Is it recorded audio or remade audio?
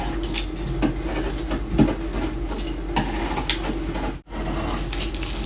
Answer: recorded